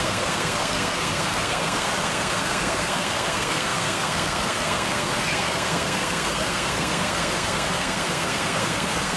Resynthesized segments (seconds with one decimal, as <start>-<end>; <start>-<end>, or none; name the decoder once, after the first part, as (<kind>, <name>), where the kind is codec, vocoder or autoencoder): 0.0-9.2 (codec, SNAC)